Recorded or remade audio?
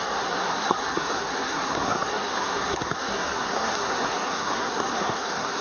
remade